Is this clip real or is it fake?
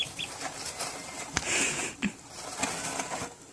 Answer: real